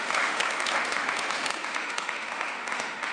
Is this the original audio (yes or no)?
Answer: no